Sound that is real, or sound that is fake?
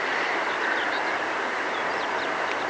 real